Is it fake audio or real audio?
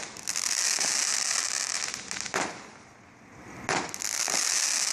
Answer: real